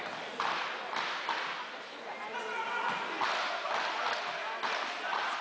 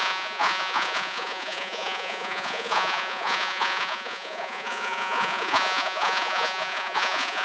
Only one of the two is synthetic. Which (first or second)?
second